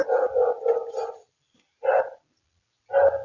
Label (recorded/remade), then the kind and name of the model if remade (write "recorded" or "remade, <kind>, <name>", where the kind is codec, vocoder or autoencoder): recorded